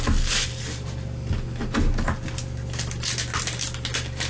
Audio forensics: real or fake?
real